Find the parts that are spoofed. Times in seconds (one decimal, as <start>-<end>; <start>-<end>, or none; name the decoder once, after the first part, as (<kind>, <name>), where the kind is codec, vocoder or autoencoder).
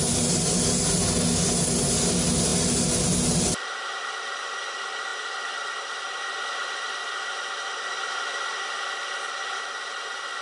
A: none